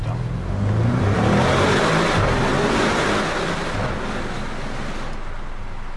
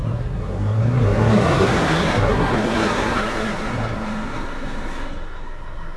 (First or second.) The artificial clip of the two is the second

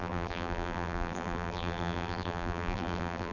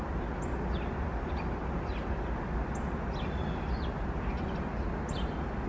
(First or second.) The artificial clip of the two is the first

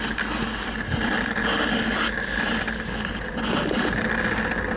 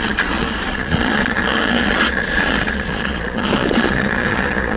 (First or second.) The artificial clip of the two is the second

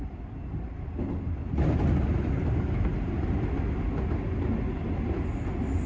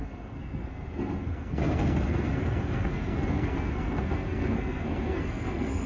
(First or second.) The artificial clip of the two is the second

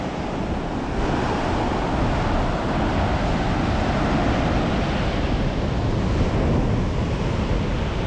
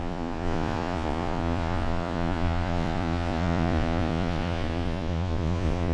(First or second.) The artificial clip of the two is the second